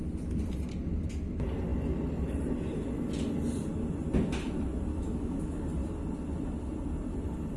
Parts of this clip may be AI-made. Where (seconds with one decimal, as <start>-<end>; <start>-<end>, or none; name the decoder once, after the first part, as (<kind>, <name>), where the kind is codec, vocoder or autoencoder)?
4.9-5.6 (autoencoder, DAC-VAE)